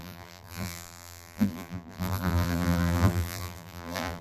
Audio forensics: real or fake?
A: fake